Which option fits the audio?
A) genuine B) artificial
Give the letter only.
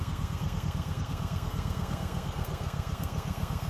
B